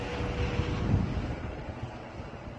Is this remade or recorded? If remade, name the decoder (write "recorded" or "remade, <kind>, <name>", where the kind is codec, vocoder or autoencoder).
recorded